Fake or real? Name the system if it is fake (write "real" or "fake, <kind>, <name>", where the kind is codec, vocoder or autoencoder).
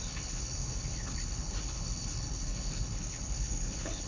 fake, codec, HILCodec